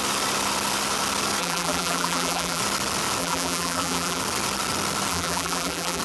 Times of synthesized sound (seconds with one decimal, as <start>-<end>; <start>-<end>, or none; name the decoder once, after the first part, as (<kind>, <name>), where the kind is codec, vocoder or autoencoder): 1.4-2.6 (vocoder, BigVGAN v2); 3.2-4.2; 5.1-6.0